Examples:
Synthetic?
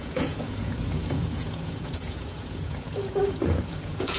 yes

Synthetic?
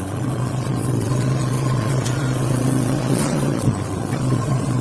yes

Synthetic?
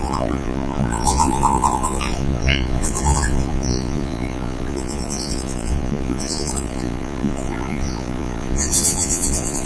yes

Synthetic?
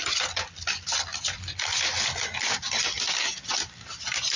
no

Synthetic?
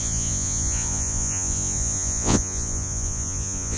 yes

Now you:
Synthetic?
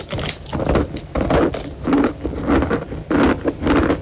no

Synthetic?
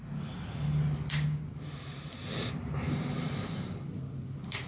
no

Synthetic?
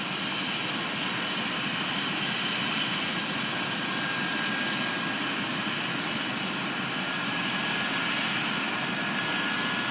no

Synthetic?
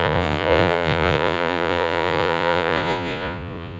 yes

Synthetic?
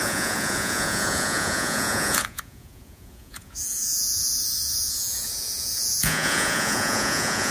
yes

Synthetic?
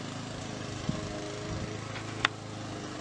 no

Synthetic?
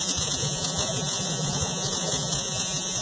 yes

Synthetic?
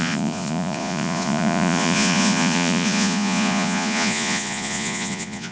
yes